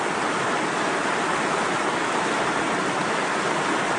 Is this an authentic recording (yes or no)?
yes